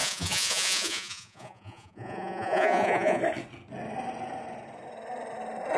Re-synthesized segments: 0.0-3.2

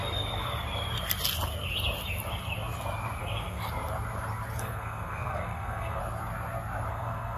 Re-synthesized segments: 3.2-3.6; 4.6-6.0; 6.9-7.4

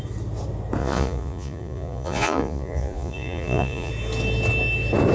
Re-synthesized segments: 0.8-3.9

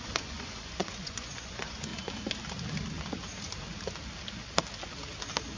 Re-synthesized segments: 0.0-1.9